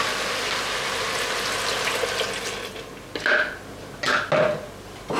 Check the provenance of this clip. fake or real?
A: real